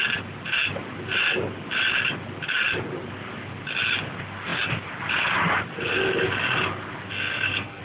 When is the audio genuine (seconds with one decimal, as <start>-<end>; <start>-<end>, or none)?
0.0-7.1